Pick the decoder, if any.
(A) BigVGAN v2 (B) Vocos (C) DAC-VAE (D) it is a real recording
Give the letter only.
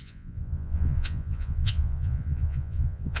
B